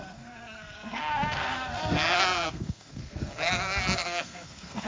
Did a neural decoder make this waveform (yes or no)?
yes